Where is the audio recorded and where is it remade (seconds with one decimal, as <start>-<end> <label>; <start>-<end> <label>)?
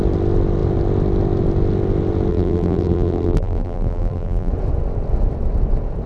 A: 0.0-2.3 recorded; 2.3-4.5 remade; 4.5-6.1 recorded